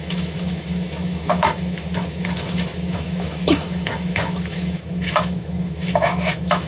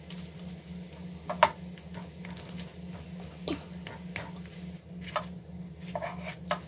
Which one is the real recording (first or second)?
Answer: second